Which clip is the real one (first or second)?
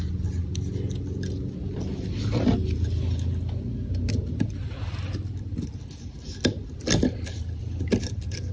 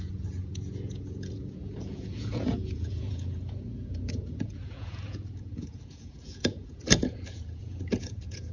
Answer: first